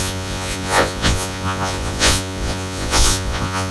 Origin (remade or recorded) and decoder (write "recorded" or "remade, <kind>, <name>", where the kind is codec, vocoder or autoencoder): remade, vocoder, Vocos